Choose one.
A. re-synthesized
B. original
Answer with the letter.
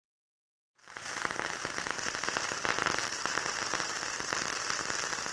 B